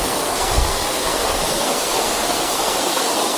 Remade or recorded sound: remade